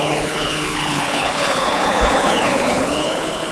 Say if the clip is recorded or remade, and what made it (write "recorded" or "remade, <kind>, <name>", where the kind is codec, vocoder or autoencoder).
remade, codec, HILCodec